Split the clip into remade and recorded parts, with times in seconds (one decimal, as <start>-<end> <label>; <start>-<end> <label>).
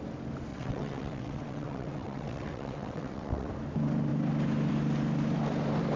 0.0-0.5 recorded; 0.5-3.5 remade; 3.5-6.0 recorded